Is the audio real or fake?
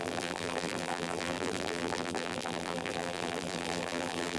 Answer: fake